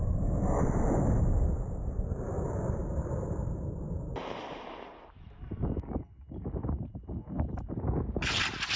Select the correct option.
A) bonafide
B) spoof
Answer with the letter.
A